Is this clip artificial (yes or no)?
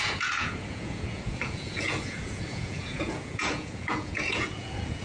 yes